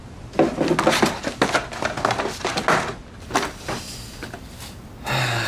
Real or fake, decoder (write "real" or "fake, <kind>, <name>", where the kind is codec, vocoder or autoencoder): real